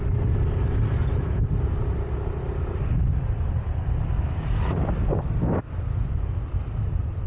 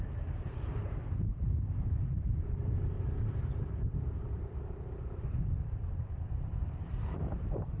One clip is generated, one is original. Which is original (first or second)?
first